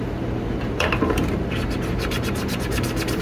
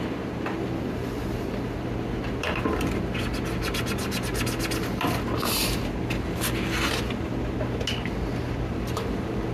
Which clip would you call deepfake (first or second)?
first